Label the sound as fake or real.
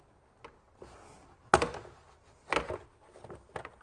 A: real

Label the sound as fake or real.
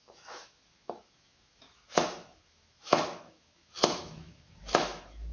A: fake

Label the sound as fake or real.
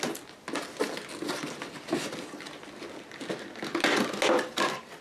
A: real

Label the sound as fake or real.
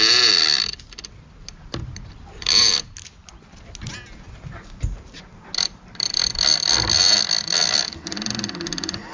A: real